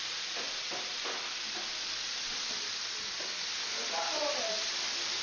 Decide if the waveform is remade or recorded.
recorded